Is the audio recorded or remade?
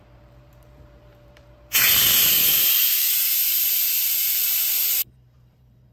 remade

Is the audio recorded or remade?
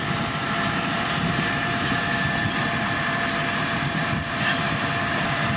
remade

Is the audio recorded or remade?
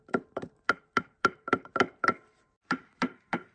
remade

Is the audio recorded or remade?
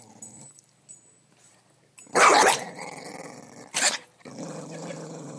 remade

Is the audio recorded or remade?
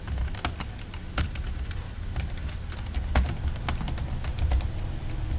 recorded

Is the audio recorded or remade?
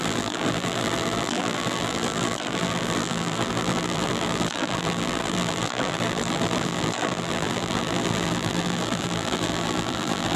remade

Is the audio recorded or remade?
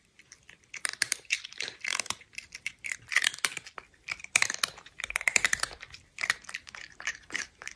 remade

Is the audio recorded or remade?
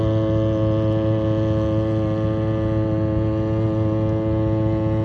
recorded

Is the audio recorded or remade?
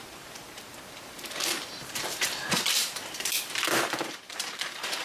remade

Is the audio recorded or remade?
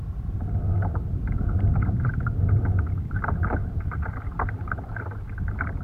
recorded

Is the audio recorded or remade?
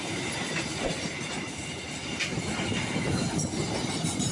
recorded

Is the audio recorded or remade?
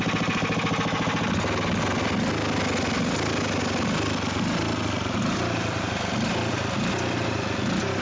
recorded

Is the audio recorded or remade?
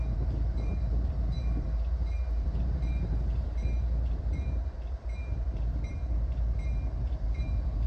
remade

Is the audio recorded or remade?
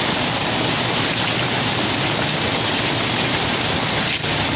remade